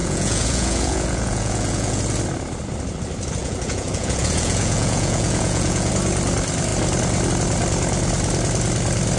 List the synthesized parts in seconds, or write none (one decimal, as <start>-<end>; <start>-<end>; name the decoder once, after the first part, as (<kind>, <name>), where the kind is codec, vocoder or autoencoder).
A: 0.0-2.0 (vocoder, Vocos); 3.4-5.9

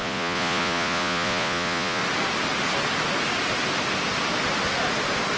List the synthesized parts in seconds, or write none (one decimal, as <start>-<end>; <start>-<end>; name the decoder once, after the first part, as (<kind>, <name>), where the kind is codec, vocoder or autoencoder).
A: 0.0-2.0 (vocoder, Vocos)

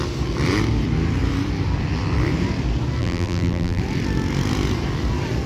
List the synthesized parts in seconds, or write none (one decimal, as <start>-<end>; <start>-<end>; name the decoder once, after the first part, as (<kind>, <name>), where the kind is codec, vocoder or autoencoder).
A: 3.0-3.8 (vocoder, BigVGAN v2)

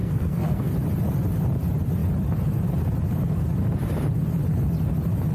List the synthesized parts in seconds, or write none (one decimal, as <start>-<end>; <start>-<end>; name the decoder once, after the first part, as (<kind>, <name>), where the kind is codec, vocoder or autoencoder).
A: 0.0-0.7 (codec, SNAC)

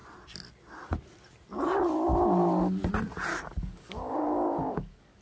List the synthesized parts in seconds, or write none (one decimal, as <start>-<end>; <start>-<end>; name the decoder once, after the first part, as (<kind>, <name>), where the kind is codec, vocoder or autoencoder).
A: 3.3-5.2 (codec, DAC)

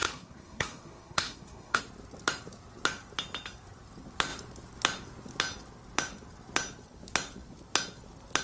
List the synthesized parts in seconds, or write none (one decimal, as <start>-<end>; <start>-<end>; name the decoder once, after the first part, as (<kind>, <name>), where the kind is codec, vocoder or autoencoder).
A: 0.0-1.8 (codec, SNAC)